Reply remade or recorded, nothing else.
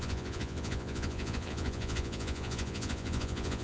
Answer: remade